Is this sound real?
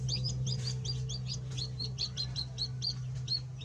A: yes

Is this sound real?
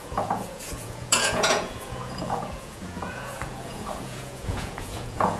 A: no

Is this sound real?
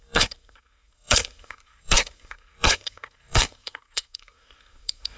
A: no